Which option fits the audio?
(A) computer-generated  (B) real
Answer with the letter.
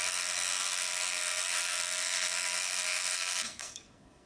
A